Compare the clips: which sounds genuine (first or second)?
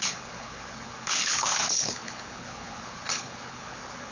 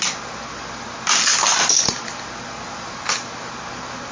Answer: second